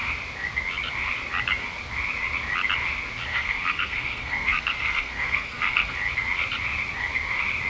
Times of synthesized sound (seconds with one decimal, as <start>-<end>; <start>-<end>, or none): 3.3-5.9